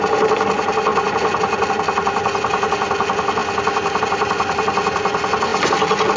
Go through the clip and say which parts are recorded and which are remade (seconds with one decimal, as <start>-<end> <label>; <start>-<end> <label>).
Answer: 0.0-6.2 recorded